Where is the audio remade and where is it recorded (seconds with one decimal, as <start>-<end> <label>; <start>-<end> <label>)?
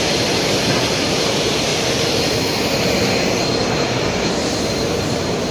0.0-1.7 remade; 1.7-3.7 recorded; 3.7-5.5 remade